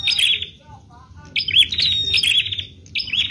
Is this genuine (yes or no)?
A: yes